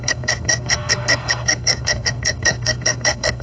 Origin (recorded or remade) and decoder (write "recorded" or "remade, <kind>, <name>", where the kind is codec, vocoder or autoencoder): remade, codec, SNAC